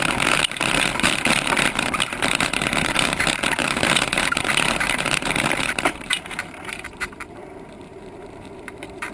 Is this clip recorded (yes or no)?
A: no